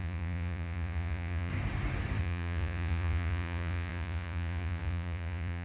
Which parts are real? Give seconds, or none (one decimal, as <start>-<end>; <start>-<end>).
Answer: 1.5-2.2